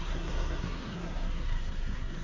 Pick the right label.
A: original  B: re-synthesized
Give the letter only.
B